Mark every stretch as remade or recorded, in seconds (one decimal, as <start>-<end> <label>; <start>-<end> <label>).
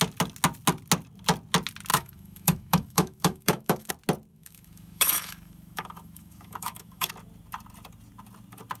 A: 0.0-1.9 recorded; 1.9-3.9 remade; 3.9-4.3 recorded; 4.3-7.1 remade; 7.1-8.8 recorded